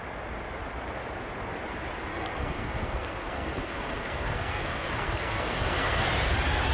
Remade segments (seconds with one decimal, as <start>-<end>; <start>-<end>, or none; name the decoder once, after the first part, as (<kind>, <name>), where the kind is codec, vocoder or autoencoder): 2.1-6.1 (codec, SNAC)